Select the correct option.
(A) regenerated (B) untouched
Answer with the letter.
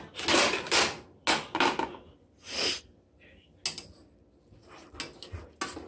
B